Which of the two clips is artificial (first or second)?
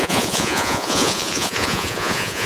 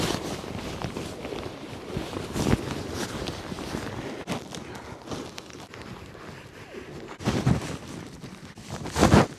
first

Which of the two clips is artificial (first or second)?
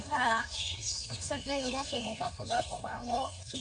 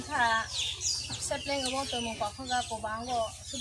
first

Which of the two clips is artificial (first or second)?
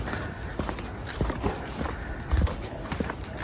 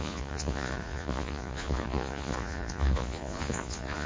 second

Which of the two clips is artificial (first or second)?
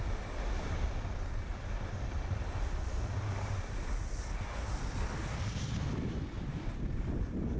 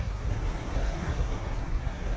second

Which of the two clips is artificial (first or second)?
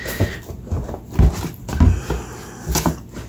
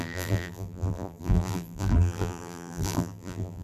second